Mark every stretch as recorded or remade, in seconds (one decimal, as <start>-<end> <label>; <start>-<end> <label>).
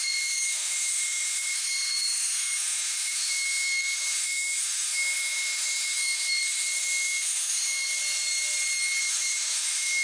0.0-8.0 remade; 8.0-9.0 recorded; 9.0-10.0 remade